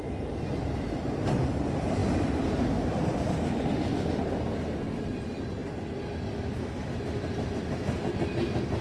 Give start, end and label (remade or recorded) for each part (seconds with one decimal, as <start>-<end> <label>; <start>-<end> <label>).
0.0-8.8 recorded

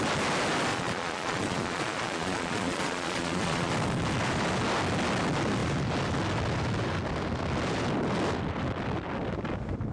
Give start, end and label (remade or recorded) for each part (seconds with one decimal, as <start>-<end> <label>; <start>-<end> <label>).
0.0-0.7 recorded; 0.7-3.7 remade; 3.7-9.9 recorded

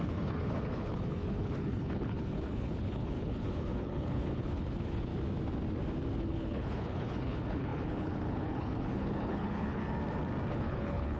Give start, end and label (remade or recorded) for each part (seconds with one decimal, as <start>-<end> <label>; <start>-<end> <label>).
0.0-5.1 remade; 5.1-6.2 recorded; 6.2-9.8 remade; 9.8-10.5 recorded; 10.5-11.2 remade

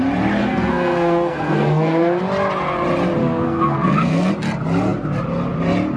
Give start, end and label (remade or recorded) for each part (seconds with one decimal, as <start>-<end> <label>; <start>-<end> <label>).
0.0-0.4 recorded; 0.4-2.2 remade; 2.2-3.2 recorded; 3.2-4.3 remade; 4.3-6.0 recorded